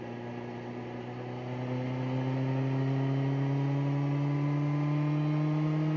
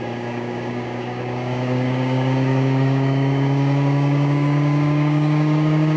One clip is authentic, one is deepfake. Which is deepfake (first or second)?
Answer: second